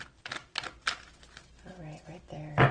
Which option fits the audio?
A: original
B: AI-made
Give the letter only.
A